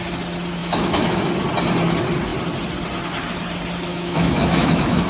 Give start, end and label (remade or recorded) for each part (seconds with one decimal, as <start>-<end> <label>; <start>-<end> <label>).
0.0-0.6 recorded; 0.6-1.3 remade; 1.3-3.9 recorded; 3.9-5.1 remade